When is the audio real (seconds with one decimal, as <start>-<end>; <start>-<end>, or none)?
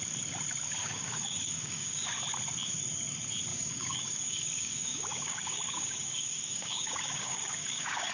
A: 0.0-0.8; 2.2-3.5